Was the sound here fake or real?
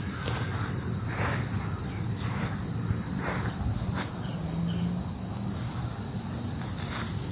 real